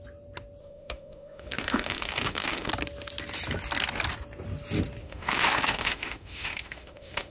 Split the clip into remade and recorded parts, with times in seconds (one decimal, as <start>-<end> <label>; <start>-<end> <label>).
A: 0.0-0.6 recorded; 0.6-2.7 remade; 2.7-5.0 recorded; 5.0-7.3 remade